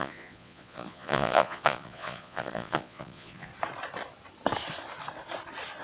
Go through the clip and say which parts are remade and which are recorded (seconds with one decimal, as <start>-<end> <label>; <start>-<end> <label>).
0.0-3.5 remade; 3.5-5.8 recorded

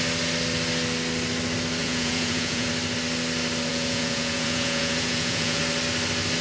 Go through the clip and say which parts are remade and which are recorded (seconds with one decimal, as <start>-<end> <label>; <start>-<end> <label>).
0.0-1.8 recorded; 1.8-2.7 remade; 2.7-3.7 recorded; 3.7-5.6 remade; 5.6-6.4 recorded

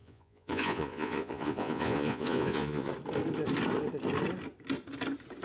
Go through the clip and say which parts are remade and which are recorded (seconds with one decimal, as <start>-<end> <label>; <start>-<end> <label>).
0.0-2.9 remade; 2.9-5.4 recorded